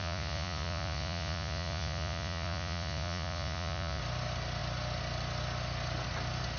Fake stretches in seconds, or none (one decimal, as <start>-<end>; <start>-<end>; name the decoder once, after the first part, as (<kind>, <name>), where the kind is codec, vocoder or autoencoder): 0.0-4.0 (vocoder, Vocos)